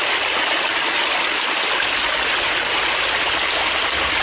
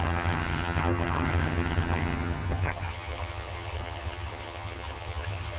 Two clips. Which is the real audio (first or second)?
first